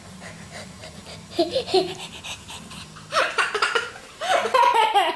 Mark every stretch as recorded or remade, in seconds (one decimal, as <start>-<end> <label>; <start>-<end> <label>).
0.0-5.2 recorded